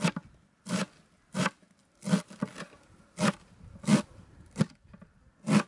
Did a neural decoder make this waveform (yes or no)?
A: no